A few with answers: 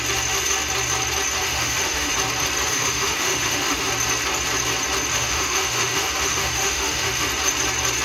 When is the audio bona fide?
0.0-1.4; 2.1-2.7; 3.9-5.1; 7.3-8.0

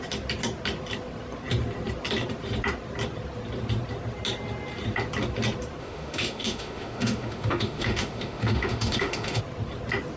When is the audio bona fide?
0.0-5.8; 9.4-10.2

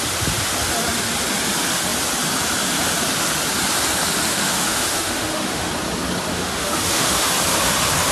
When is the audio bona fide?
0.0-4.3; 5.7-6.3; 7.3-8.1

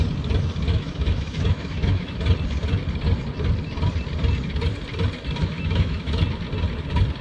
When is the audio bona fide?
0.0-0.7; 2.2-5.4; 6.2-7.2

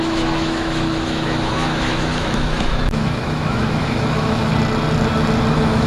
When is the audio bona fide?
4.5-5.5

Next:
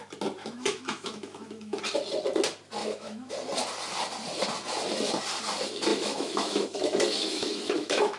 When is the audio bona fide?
0.0-0.4; 1.8-2.8; 3.3-5.9